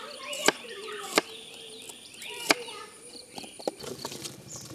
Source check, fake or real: fake